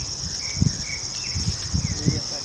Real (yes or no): yes